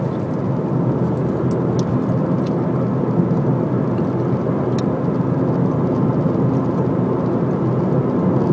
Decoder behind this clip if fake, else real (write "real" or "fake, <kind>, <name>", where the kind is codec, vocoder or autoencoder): real